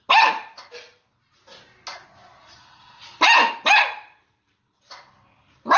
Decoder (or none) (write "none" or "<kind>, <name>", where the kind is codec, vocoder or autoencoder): none